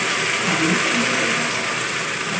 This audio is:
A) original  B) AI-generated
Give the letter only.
A